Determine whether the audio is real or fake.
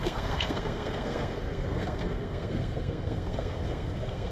fake